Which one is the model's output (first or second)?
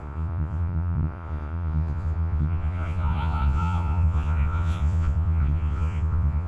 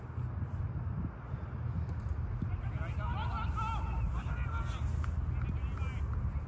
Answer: first